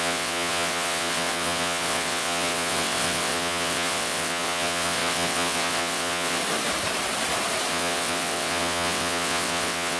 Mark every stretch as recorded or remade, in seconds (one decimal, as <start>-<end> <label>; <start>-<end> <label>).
0.0-6.4 remade; 6.4-7.7 recorded; 7.7-10.0 remade